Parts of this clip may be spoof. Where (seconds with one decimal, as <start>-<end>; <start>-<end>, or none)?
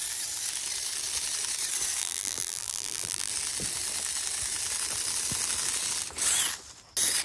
2.0-3.3